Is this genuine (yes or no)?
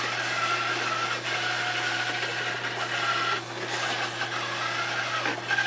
yes